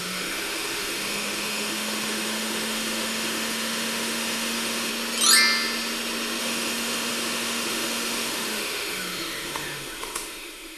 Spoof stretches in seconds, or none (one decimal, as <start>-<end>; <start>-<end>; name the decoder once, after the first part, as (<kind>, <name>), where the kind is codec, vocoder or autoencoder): 0.0-4.9 (autoencoder, DAC-VAE); 6.4-10.8